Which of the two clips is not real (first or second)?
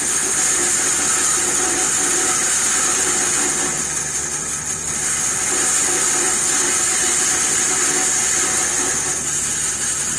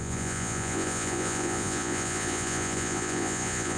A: second